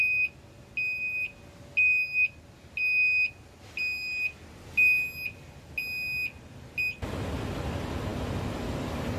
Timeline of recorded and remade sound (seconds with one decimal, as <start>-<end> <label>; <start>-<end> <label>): 0.0-9.2 recorded